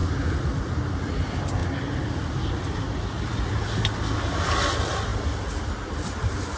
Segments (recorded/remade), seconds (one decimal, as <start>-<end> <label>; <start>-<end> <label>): 0.0-0.7 remade; 0.7-1.6 recorded; 1.6-3.5 remade; 3.5-5.1 recorded; 5.1-5.7 remade; 5.7-6.6 recorded